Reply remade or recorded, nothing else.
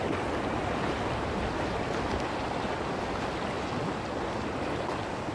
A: recorded